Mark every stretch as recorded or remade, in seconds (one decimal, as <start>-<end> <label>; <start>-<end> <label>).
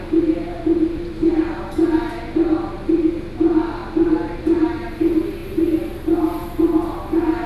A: 0.0-7.5 recorded